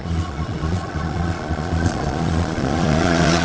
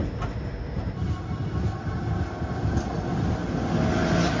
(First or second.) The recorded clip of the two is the second